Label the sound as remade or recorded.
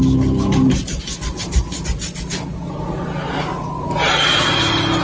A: recorded